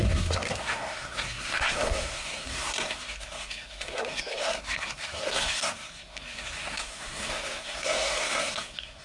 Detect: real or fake fake